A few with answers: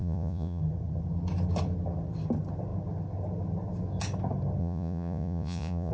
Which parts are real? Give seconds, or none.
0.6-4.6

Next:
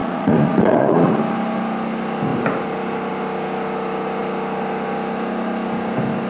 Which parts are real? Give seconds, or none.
1.2-6.3

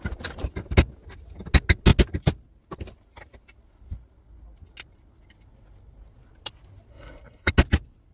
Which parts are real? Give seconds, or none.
0.0-6.9; 7.5-8.1